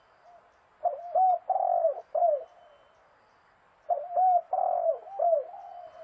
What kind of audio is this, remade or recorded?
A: recorded